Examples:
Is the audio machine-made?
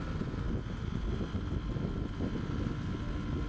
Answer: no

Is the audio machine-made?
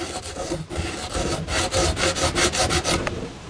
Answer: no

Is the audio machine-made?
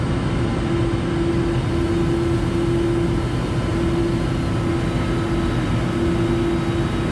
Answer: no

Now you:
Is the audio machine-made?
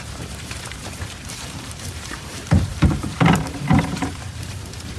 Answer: yes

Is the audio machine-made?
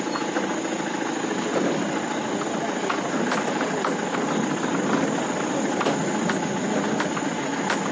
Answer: no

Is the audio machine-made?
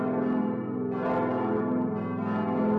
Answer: no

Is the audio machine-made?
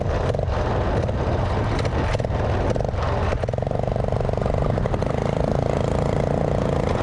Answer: no